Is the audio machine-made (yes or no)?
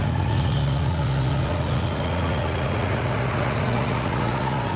yes